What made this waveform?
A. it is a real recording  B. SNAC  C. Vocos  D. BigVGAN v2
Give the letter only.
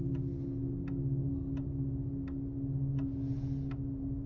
A